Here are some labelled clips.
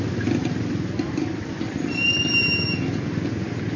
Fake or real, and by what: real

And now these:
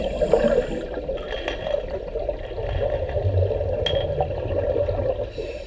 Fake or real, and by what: real